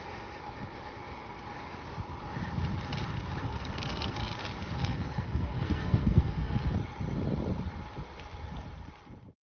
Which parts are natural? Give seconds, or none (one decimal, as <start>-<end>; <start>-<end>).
0.0-3.4; 4.2-4.8; 6.6-9.4